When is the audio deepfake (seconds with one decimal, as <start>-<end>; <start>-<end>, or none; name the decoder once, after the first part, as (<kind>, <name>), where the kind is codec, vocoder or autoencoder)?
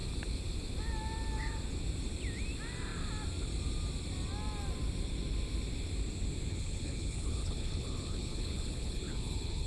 6.5-9.7 (codec, HILCodec)